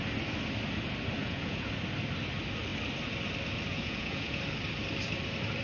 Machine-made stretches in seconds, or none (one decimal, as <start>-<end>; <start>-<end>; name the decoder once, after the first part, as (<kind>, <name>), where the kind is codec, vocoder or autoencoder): 1.2-1.7 (vocoder, Vocos); 3.7-4.4